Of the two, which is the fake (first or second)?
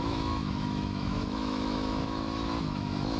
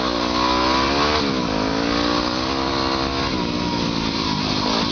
first